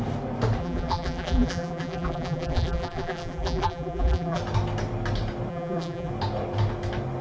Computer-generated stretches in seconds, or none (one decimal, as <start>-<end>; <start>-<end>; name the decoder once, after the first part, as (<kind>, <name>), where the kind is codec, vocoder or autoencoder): 0.6-4.4 (vocoder, BigVGAN v2); 5.5-6.1